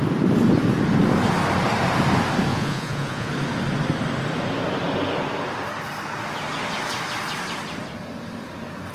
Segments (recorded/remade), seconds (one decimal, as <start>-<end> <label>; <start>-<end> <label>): 0.0-2.5 recorded; 2.5-3.3 remade; 3.3-8.9 recorded